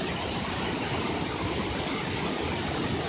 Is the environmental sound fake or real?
real